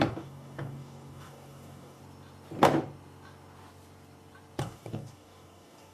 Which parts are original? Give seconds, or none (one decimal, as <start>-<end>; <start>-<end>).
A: 2.0-4.6